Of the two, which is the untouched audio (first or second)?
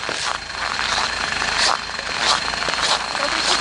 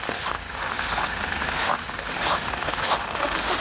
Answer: first